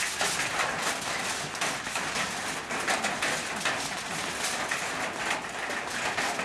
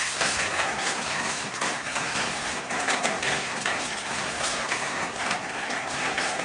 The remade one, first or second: second